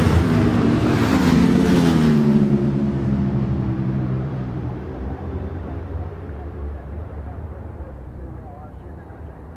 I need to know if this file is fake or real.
fake